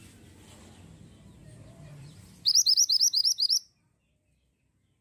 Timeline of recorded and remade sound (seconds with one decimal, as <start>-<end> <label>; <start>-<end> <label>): 0.0-1.4 recorded; 1.4-2.5 remade; 2.5-5.0 recorded